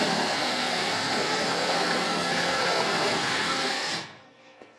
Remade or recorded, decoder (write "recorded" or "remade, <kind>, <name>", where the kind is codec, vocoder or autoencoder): remade, codec, SNAC